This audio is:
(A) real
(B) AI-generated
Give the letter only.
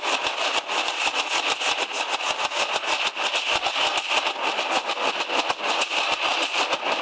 A